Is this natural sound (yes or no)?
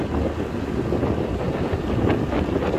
yes